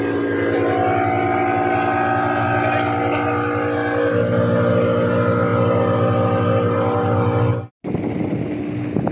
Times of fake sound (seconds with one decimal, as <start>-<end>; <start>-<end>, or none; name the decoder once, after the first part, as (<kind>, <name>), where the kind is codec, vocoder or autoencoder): none